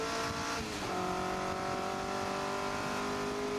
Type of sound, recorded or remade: recorded